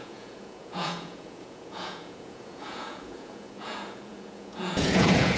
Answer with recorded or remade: remade